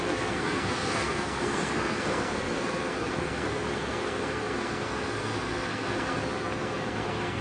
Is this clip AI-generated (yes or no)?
yes